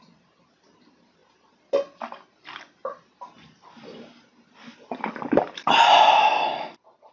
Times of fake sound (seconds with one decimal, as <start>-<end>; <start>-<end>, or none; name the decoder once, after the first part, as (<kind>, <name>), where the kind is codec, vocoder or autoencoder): none